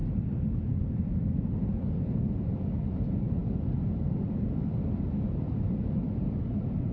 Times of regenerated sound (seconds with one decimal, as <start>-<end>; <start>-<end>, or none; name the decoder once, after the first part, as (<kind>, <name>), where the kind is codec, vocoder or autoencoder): none